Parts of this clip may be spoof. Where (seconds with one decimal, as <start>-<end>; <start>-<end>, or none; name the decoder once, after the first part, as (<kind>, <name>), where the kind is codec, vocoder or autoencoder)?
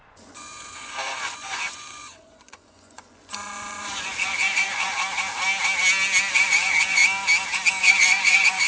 0.0-4.9 (vocoder, Vocos); 6.3-7.0; 7.8-8.7